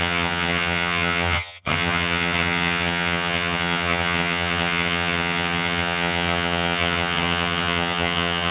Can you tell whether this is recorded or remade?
remade